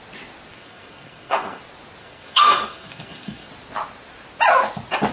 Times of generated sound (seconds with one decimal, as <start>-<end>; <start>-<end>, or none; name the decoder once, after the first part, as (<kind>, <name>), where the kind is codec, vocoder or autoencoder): 0.5-1.6 (codec, SNAC); 2.0-3.5